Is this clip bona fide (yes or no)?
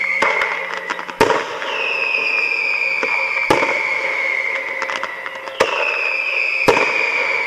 yes